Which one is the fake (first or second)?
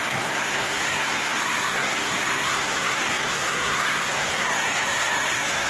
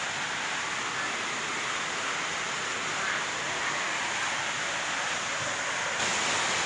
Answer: first